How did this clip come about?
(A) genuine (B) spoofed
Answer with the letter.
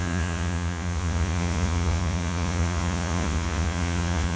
B